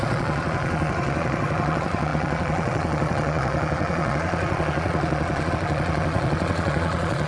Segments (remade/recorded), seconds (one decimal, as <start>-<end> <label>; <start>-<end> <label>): 0.0-7.3 remade